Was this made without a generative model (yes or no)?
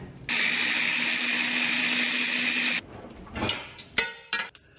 yes